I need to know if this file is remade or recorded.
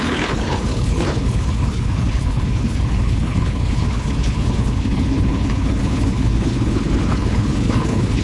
remade